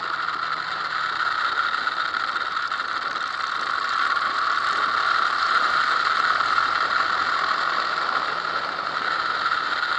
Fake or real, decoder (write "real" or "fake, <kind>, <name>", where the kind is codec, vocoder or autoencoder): fake, vocoder, BigVGAN v2